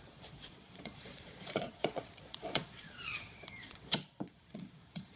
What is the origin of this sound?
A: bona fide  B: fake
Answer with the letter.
B